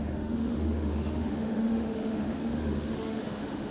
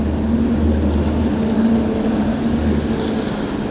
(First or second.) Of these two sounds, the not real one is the first